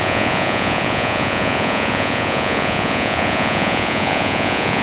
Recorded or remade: remade